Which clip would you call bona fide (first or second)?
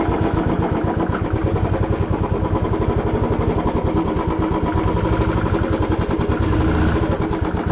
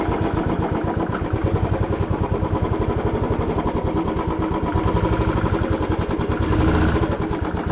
first